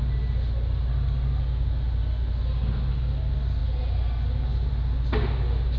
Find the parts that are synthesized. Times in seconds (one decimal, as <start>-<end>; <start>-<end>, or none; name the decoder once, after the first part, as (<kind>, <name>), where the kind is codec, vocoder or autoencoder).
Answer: none